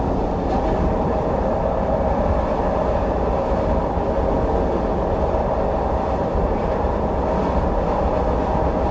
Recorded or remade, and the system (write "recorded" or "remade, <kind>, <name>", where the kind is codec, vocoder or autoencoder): recorded